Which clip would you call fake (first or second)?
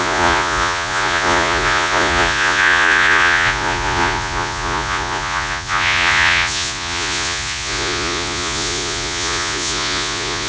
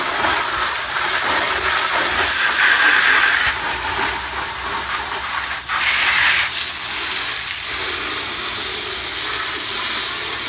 first